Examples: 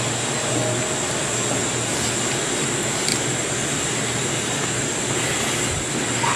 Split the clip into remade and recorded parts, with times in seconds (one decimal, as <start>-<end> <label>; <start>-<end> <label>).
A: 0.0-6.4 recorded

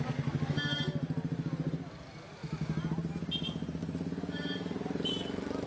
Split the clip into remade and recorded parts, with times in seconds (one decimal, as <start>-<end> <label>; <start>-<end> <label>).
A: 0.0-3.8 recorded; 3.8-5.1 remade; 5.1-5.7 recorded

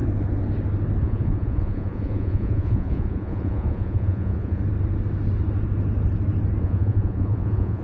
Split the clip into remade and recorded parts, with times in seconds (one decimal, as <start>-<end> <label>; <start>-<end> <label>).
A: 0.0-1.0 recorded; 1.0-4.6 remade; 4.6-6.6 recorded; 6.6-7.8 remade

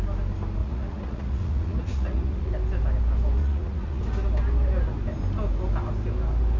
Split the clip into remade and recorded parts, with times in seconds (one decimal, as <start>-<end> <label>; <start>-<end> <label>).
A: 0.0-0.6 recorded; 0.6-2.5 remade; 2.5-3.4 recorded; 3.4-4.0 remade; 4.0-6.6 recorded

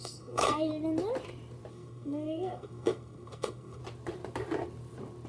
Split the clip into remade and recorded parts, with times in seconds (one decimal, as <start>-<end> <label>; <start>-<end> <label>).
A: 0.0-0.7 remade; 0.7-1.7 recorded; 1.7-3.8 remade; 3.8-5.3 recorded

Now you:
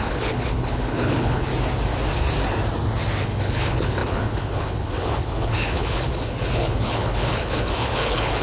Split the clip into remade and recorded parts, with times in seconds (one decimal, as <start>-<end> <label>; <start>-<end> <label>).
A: 0.0-1.5 remade; 1.5-3.2 recorded; 3.2-8.4 remade